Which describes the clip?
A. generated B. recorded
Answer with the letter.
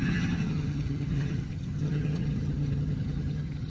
A